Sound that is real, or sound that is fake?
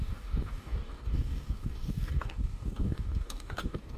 fake